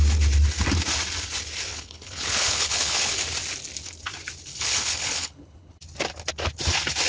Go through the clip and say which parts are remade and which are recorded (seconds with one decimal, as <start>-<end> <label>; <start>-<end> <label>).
0.0-1.7 recorded; 1.7-3.1 remade; 3.1-4.5 recorded; 4.5-5.8 remade; 5.8-7.1 recorded